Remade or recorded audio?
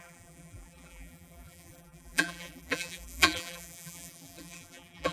remade